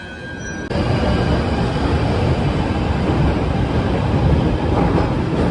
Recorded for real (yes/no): yes